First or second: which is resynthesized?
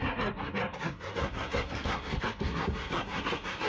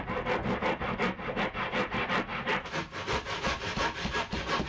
first